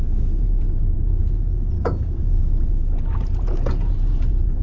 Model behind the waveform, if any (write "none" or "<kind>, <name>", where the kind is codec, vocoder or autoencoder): vocoder, Vocos